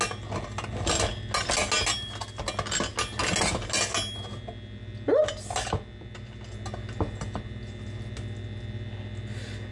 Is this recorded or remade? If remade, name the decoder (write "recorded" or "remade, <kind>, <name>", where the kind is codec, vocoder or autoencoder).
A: recorded